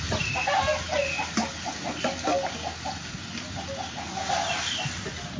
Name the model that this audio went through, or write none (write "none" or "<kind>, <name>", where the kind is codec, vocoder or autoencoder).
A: none